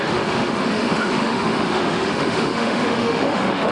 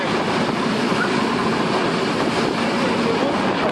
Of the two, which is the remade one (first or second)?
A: first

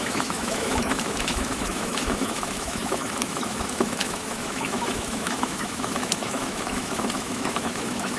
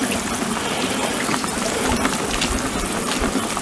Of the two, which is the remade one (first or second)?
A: first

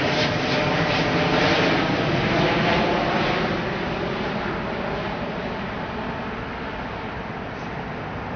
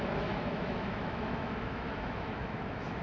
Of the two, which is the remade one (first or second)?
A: second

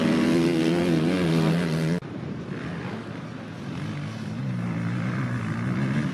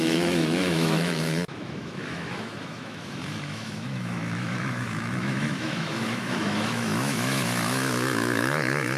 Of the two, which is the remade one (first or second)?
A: second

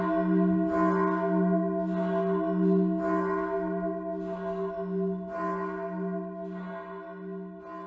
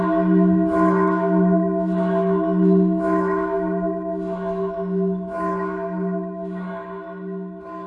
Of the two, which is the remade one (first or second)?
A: second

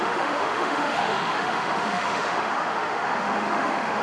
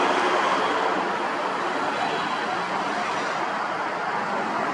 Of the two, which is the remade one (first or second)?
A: first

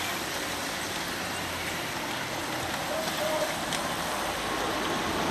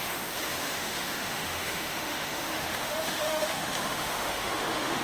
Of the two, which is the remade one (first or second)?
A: second